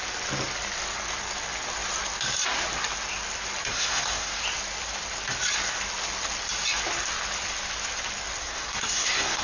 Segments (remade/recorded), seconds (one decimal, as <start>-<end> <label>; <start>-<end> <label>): 0.0-3.7 recorded; 3.7-4.4 remade; 4.4-8.4 recorded; 8.4-9.4 remade